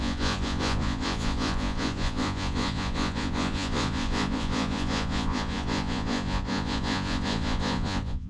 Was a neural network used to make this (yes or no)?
yes